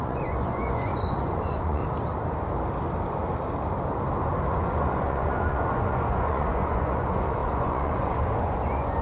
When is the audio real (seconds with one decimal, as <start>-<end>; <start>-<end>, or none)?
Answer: 1.8-4.5